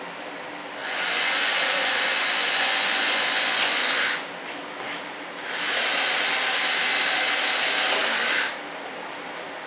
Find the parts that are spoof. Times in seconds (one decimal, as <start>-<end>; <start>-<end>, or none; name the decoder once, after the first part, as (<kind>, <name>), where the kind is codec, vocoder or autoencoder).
0.8-4.3 (vocoder, Vocos)